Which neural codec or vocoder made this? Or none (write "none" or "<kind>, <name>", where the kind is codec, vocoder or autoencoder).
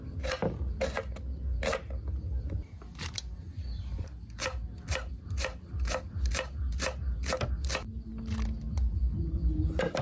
none